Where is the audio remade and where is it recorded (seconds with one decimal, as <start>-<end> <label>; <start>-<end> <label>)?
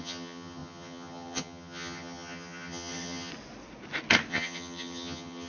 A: 0.0-3.3 remade; 3.3-4.3 recorded; 4.3-5.5 remade